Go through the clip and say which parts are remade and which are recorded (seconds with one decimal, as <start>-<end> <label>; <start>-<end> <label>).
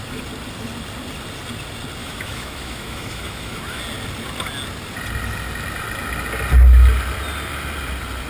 0.0-2.0 recorded; 2.0-3.8 remade; 3.8-8.3 recorded